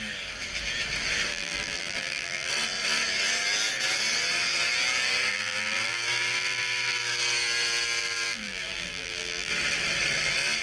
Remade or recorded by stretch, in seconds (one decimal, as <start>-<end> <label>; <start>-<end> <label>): 0.0-1.3 recorded; 1.3-2.5 remade; 2.5-5.3 recorded; 5.3-7.2 remade; 7.2-8.0 recorded; 8.0-9.5 remade; 9.5-10.6 recorded